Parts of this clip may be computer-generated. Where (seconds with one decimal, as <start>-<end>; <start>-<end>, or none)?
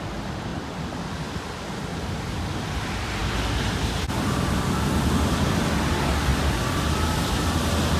1.9-2.4